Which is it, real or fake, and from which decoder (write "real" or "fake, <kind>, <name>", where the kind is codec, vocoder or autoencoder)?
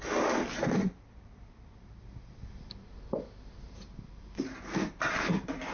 real